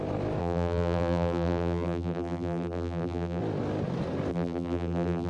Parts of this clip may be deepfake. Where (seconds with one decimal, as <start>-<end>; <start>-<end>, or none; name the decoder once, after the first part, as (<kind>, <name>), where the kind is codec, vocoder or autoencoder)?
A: 0.4-3.4 (vocoder, BigVGAN v2); 4.3-5.3